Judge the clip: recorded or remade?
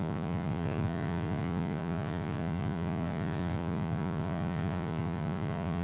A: remade